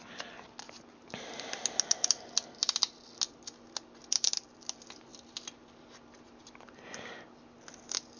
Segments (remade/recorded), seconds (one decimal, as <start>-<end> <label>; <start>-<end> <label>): 0.0-8.2 recorded